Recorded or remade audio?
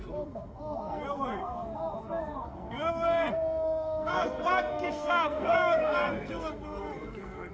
remade